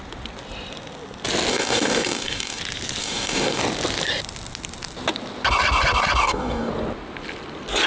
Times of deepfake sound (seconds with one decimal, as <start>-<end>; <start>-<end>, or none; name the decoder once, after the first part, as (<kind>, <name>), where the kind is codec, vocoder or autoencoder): 1.5-2.6 (codec, DAC); 3.0-3.6; 6.2-6.7